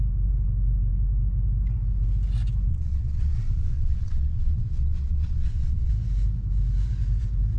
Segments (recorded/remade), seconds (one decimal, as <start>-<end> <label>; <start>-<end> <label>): 0.0-2.7 recorded; 2.7-5.9 remade; 5.9-7.6 recorded